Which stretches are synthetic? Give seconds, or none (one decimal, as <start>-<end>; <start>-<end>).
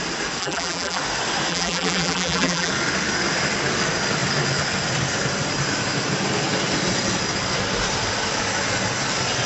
0.4-1.0; 1.5-2.7